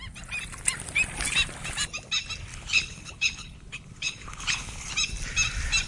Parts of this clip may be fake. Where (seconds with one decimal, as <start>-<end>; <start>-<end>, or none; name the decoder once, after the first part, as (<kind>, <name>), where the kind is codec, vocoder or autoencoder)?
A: 2.5-4.9 (codec, HILCodec)